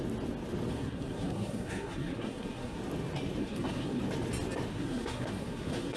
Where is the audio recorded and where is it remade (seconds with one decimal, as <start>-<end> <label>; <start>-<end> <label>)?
0.0-0.7 recorded; 0.7-2.8 remade; 2.8-3.4 recorded; 3.4-4.0 remade; 4.0-4.7 recorded; 4.7-6.0 remade